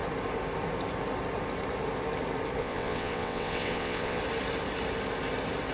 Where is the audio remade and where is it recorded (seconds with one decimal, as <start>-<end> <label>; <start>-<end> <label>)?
0.0-2.6 recorded; 2.6-4.2 remade; 4.2-5.7 recorded